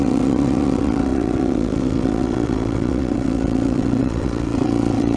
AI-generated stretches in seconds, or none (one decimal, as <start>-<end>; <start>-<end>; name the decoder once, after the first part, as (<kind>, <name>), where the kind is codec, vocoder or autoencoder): 0.0-5.2 (vocoder, WaveNeXt)